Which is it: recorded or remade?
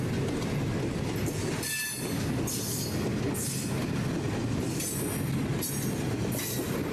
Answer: recorded